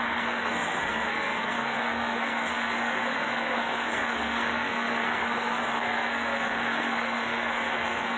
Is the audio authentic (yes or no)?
no